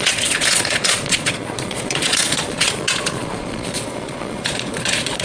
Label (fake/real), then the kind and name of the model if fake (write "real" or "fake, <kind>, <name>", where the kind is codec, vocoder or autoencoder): fake, vocoder, Vocos